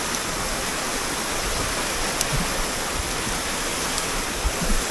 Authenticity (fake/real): real